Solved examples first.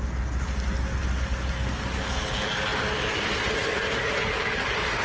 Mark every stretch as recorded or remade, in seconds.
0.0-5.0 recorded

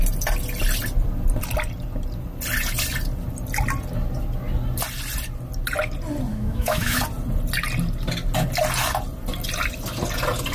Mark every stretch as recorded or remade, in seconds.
0.0-6.3 recorded; 6.3-7.0 remade; 7.0-10.5 recorded

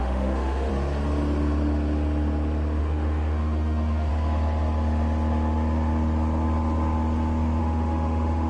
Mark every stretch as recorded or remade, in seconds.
0.0-0.7 remade; 0.7-2.8 recorded; 2.8-4.1 remade; 4.1-7.6 recorded; 7.6-8.5 remade